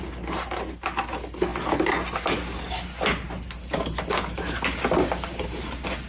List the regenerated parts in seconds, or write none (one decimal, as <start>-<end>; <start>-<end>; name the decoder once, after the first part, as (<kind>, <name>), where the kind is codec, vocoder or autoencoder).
none

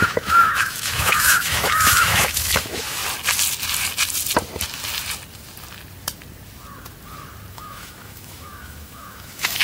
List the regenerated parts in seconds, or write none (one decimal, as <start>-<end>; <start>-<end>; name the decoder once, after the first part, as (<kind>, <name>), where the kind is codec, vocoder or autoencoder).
0.0-3.0 (autoencoder, DAC-VAE); 7.5-9.6

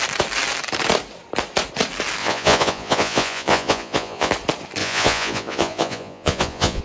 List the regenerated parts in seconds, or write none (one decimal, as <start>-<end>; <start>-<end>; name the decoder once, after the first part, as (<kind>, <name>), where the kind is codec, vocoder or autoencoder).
2.2-4.3 (vocoder, Vocos); 4.8-6.8

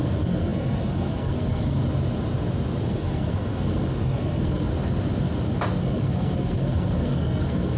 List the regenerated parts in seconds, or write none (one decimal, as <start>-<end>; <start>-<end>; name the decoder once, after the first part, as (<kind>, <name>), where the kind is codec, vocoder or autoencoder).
0.0-1.8 (codec, SNAC); 2.8-4.7; 5.8-7.8

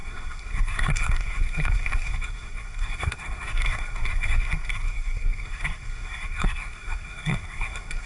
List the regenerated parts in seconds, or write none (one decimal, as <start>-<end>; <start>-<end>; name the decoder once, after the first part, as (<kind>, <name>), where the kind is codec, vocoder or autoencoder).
0.0-8.1 (codec, SNAC)

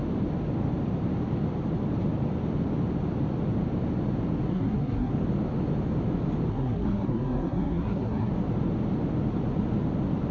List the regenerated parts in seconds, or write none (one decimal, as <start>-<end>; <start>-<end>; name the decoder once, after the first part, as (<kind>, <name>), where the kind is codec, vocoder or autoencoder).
4.5-5.1 (codec, SNAC); 6.5-8.3